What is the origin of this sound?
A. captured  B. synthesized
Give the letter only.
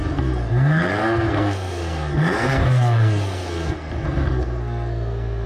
B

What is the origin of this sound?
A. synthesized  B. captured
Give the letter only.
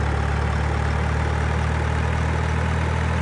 B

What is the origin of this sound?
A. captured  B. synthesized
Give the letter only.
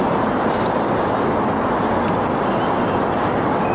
A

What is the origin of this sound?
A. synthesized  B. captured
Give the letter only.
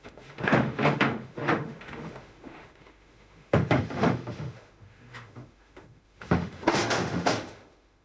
A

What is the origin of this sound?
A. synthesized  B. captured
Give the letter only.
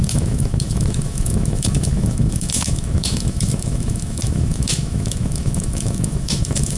A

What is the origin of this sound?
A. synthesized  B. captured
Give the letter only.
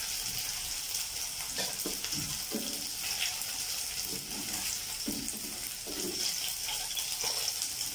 B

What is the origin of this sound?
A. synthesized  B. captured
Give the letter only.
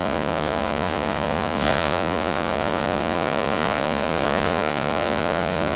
A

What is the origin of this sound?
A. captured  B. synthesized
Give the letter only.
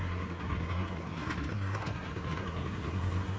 B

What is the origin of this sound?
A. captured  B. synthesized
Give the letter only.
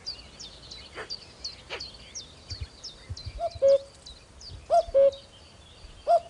A